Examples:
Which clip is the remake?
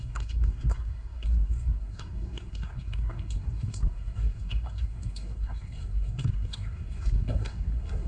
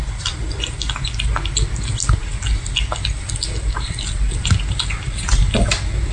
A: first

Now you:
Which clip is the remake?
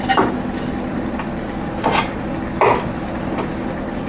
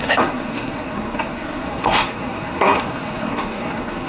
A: second